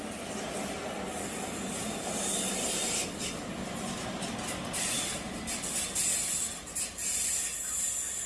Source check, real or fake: real